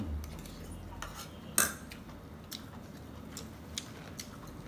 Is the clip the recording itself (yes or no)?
yes